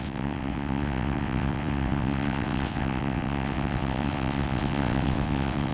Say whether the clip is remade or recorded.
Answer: remade